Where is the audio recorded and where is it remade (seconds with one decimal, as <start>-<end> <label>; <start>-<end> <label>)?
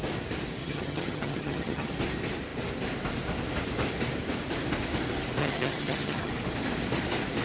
0.0-0.6 recorded; 0.6-1.9 remade; 1.9-5.4 recorded; 5.4-6.3 remade; 6.3-7.4 recorded